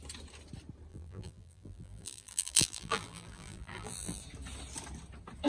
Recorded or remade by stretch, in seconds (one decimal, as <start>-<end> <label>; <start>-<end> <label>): 0.0-0.9 recorded; 0.9-4.2 remade; 4.2-5.5 recorded